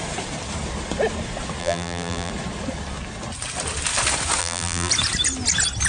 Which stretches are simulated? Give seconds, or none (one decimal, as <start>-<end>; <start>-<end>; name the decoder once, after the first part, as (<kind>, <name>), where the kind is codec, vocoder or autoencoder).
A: 1.6-2.3 (vocoder, BigVGAN v2); 4.4-4.9